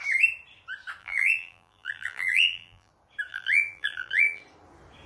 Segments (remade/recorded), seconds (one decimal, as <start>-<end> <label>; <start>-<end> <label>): 0.0-1.0 recorded; 1.0-2.9 remade; 2.9-3.3 recorded; 3.3-4.4 remade; 4.4-5.1 recorded